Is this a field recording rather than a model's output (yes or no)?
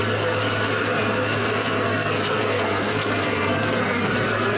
no